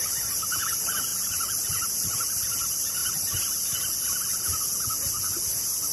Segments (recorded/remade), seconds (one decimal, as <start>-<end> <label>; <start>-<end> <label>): 0.0-5.9 recorded